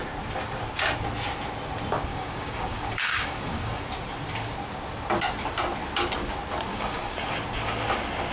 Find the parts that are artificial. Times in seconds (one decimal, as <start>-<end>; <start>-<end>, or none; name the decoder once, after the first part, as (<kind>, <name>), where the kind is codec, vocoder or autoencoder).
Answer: 2.1-3.8 (codec, DAC); 6.7-7.2